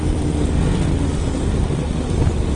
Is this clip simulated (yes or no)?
no